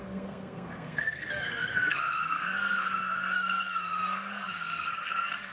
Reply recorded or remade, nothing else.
remade